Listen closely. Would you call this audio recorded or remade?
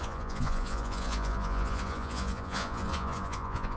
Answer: remade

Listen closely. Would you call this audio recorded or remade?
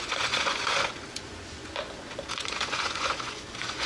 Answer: remade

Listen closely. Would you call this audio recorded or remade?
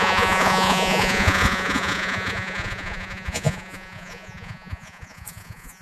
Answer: remade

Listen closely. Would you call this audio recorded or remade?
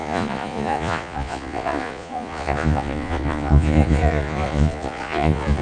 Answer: remade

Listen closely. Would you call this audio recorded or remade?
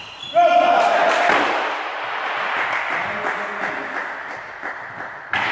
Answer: recorded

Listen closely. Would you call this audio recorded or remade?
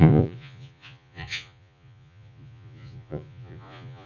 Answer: remade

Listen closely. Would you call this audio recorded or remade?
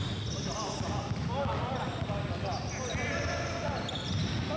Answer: recorded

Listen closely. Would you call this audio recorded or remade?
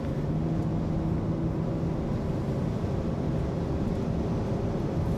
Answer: recorded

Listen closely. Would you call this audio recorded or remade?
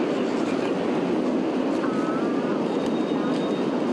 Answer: recorded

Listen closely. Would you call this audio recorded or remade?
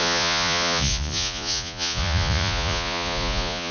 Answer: remade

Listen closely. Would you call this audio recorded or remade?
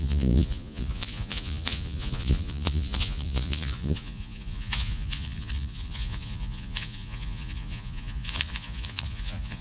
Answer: remade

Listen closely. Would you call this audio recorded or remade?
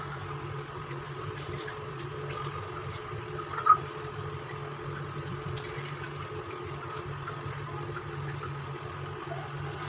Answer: recorded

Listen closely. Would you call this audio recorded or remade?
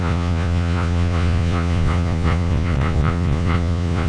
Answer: remade